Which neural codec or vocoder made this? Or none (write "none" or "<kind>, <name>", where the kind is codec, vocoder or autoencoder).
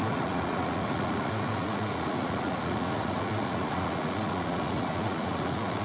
vocoder, Vocos